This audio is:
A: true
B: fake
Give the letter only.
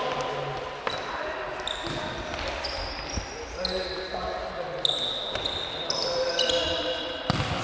A